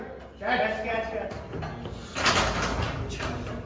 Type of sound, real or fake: real